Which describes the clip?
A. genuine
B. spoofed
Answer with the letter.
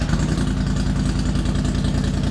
A